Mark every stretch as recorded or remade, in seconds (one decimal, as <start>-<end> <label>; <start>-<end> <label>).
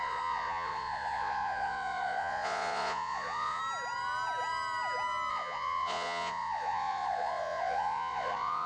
0.0-3.6 remade; 3.6-5.3 recorded; 5.3-8.7 remade